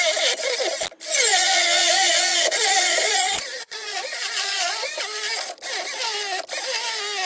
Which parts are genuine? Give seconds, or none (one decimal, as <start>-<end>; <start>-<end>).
0.0-1.1; 5.0-7.3